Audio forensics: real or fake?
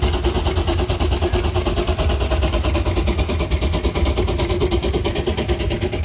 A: real